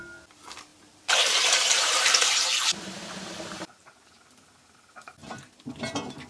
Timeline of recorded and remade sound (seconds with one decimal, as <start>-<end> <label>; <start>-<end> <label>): 0.0-0.7 recorded; 0.7-4.5 remade; 4.5-6.3 recorded